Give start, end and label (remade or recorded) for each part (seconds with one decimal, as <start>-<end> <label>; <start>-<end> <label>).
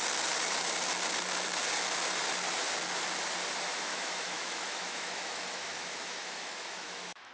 0.0-3.9 recorded; 3.9-7.3 remade